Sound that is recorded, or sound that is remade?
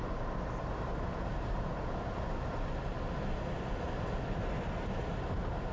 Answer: recorded